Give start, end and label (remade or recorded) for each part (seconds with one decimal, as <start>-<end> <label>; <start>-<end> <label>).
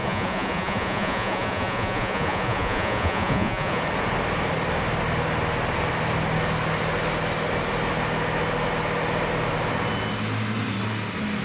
0.0-3.8 remade; 3.8-11.4 recorded